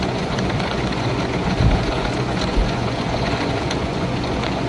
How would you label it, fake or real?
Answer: fake